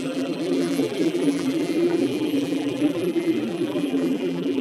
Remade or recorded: remade